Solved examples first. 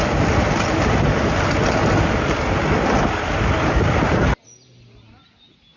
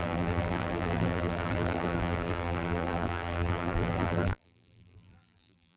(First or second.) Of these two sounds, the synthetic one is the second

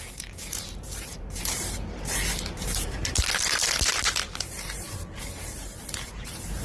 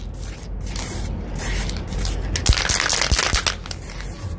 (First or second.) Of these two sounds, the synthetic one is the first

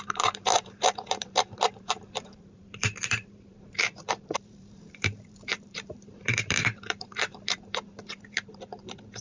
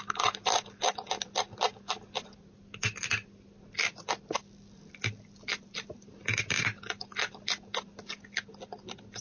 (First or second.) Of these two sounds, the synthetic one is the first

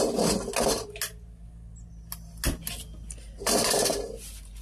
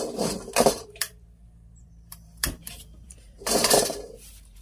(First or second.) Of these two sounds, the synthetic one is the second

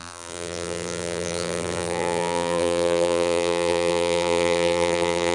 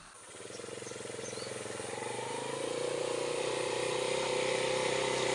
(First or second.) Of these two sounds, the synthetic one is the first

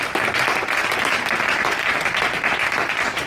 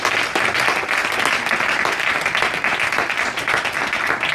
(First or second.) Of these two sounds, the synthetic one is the first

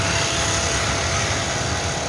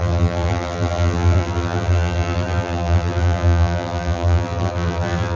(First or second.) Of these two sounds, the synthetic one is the second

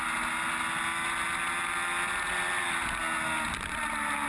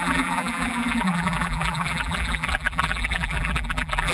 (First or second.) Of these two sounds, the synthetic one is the second